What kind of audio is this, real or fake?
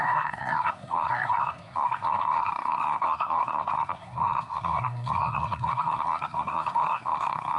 fake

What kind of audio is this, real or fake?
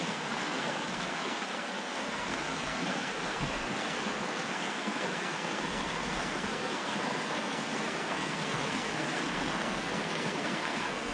fake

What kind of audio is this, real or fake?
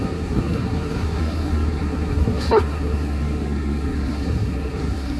fake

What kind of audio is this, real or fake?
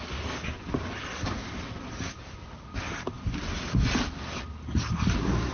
real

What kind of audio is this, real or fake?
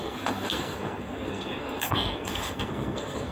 fake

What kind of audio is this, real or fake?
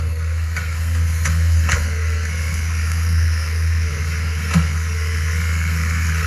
fake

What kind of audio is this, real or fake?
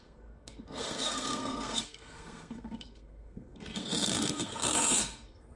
fake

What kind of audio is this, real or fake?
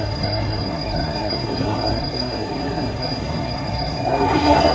fake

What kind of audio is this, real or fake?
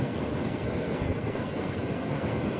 fake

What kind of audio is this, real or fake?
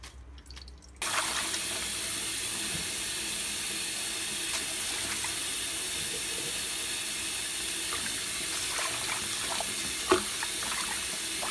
real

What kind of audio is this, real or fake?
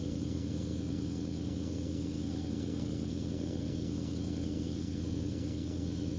fake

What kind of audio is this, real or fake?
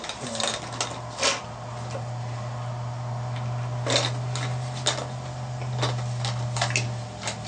real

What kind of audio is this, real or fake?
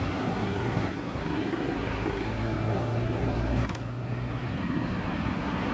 fake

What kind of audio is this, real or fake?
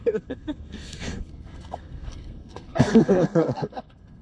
fake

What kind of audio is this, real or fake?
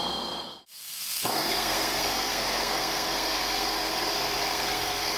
fake